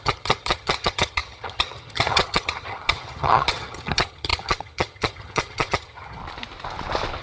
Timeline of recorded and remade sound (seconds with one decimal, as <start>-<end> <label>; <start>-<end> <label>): 0.0-6.2 remade; 6.2-7.2 recorded